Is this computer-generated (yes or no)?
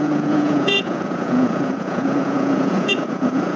yes